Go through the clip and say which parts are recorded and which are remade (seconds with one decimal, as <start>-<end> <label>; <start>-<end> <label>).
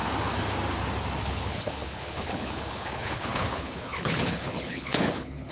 0.0-1.2 recorded; 1.2-5.5 remade